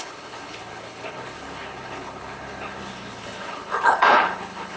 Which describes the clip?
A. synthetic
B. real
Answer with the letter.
A